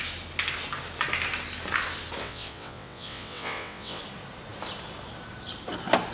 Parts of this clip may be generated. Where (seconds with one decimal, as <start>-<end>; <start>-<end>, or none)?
2.2-4.0